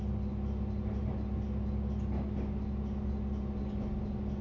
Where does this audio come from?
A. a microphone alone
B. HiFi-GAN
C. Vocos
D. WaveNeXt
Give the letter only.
A